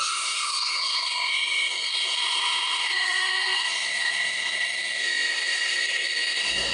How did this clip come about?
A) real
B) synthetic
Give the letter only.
B